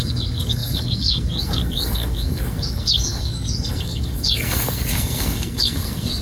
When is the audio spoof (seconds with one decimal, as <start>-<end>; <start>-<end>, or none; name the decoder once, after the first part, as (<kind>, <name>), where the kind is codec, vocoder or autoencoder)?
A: 0.0-6.2 (codec, SNAC)